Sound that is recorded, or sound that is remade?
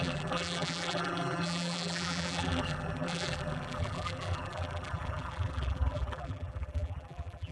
remade